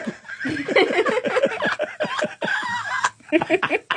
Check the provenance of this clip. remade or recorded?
recorded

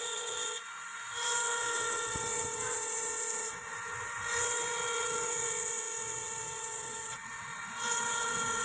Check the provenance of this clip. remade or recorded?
remade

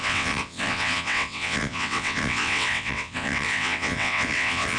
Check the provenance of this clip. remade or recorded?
remade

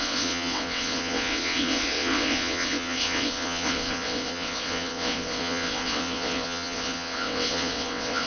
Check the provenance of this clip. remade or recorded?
remade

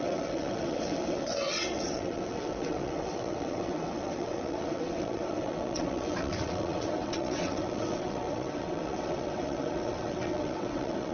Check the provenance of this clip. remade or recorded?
remade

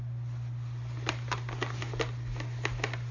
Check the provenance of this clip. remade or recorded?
recorded